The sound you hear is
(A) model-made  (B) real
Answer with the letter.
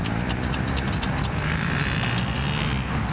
B